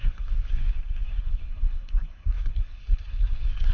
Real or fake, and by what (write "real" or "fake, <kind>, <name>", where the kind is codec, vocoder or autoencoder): fake, codec, SNAC